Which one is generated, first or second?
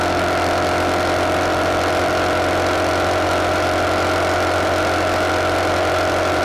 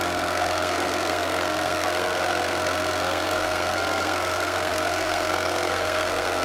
second